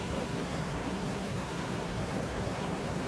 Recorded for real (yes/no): no